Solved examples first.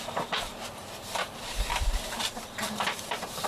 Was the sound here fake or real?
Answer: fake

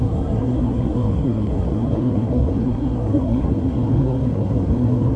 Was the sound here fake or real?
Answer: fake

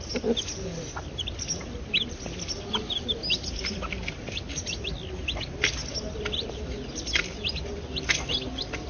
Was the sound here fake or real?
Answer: real